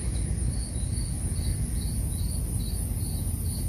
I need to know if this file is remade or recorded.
recorded